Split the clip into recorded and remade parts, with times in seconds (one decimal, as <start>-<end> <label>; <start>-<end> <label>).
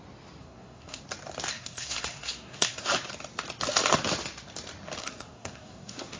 0.0-0.4 recorded; 0.4-1.0 remade; 1.0-1.5 recorded; 1.5-2.9 remade; 2.9-5.0 recorded; 5.0-6.2 remade